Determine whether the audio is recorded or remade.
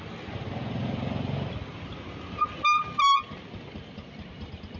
recorded